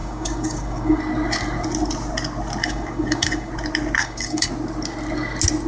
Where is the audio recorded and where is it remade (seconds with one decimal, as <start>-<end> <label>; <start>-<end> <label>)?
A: 0.0-1.0 remade; 1.0-2.6 recorded; 2.6-3.5 remade; 3.5-4.0 recorded; 4.0-4.5 remade; 4.5-5.7 recorded